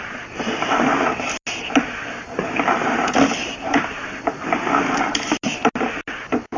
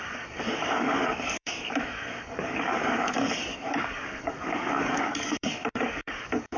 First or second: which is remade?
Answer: second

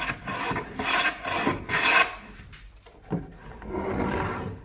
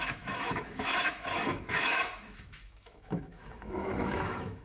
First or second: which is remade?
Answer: second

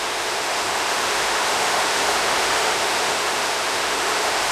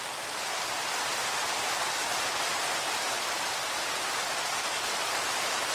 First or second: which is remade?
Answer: first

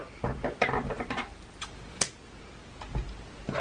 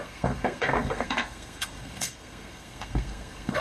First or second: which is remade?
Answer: second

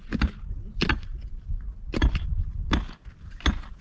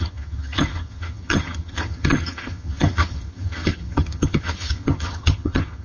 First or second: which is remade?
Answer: second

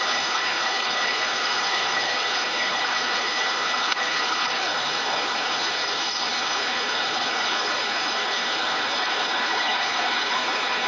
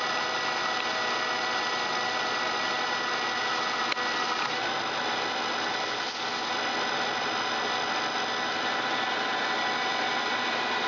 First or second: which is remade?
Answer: first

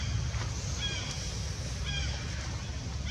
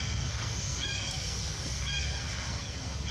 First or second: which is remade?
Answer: second